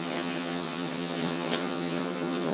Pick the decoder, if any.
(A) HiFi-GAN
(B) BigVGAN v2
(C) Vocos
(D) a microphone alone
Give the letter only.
A